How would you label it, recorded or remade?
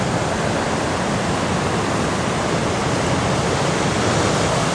remade